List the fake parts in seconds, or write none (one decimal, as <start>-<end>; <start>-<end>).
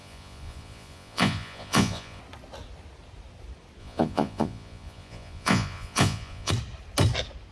0.0-2.2; 3.8-6.5